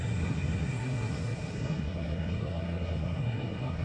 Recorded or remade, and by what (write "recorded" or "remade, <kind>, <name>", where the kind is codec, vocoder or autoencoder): remade, codec, SNAC